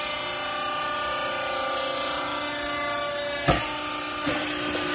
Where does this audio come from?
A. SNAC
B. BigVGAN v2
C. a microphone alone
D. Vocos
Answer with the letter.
C